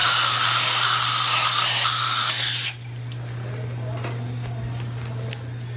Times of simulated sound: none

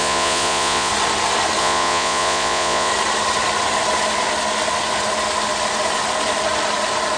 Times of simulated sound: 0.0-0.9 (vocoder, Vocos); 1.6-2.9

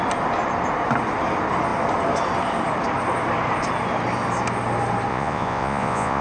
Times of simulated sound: 5.1-6.2 (vocoder, Vocos)

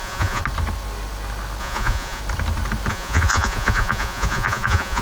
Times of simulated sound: 0.0-0.4 (vocoder, Vocos); 1.6-2.2; 2.9-5.0

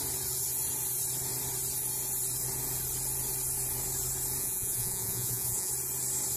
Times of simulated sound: 4.4-5.7 (vocoder, Vocos)

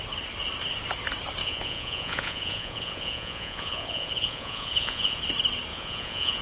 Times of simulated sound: 1.4-5.2 (vocoder, Vocos); 5.7-6.4